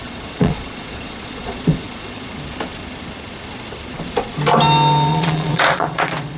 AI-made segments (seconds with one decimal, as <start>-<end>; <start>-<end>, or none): 0.0-2.3; 5.1-6.4